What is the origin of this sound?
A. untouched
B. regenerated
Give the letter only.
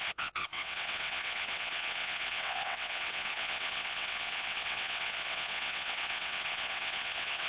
B